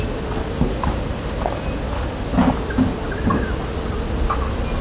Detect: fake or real real